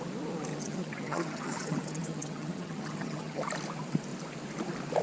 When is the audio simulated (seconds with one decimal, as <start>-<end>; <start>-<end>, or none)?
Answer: 0.5-3.5